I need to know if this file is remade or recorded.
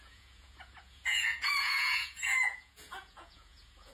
remade